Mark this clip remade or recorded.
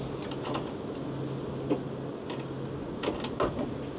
recorded